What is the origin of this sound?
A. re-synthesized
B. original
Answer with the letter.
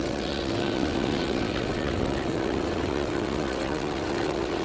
A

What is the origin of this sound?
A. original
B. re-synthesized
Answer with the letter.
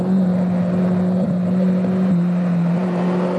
A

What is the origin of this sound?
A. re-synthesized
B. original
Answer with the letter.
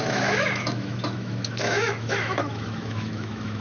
A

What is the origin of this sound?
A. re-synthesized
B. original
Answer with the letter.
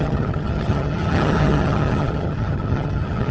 A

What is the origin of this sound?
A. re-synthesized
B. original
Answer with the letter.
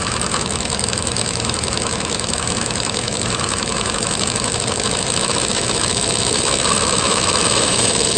A